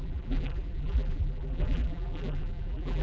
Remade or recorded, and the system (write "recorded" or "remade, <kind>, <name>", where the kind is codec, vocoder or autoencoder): remade, vocoder, BigVGAN v2